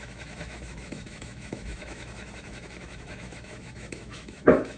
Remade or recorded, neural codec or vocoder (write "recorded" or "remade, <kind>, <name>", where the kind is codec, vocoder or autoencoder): remade, autoencoder, DAC-VAE